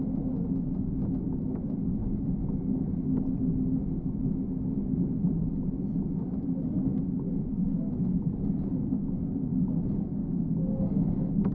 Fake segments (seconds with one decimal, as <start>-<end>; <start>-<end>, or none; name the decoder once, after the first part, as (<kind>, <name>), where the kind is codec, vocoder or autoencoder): none